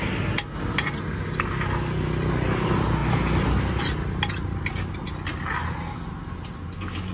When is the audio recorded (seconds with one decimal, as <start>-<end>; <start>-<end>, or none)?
0.0-7.1